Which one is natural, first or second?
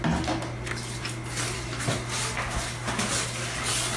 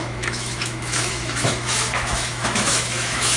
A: first